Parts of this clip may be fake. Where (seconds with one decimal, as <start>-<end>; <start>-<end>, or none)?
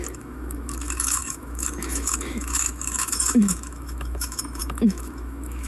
0.0-5.7